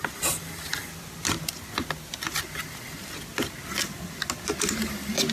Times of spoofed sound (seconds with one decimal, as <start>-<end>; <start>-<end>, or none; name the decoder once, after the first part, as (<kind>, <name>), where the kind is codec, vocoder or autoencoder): none